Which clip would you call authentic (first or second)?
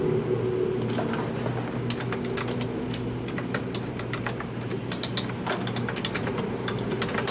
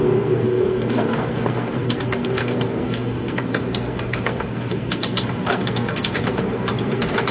first